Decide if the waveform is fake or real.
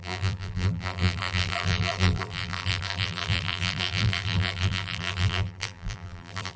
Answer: fake